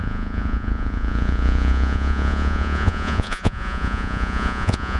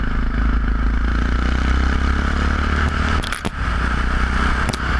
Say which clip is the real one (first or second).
second